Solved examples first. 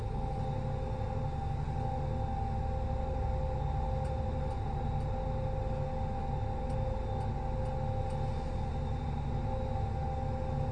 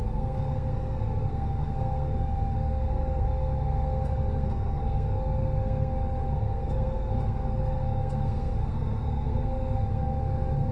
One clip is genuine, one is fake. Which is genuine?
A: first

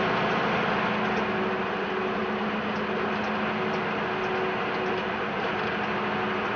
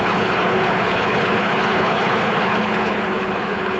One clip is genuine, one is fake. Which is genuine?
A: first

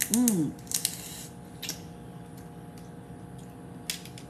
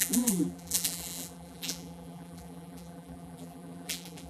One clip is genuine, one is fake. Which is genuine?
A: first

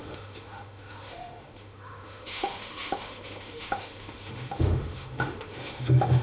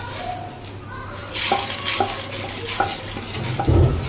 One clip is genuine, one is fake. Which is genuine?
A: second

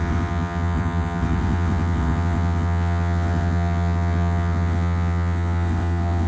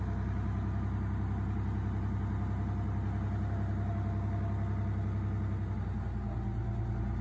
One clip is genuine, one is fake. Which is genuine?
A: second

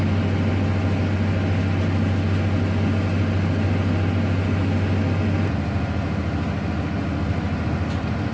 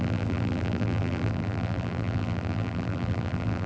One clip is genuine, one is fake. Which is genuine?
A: first